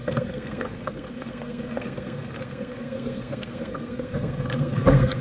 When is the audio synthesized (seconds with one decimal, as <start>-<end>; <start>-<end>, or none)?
0.0-5.2